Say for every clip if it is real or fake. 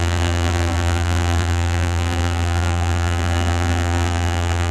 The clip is fake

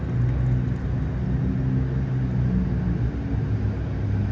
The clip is real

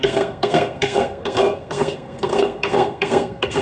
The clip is fake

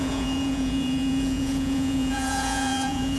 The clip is fake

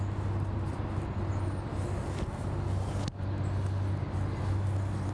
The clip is real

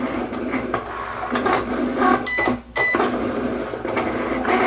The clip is real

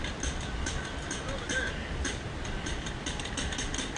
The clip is real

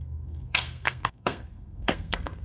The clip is fake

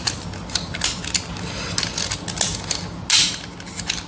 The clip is real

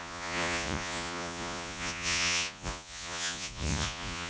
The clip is fake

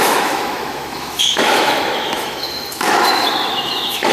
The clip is fake